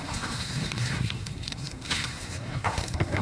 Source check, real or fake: fake